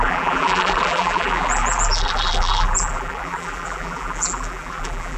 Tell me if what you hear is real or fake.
fake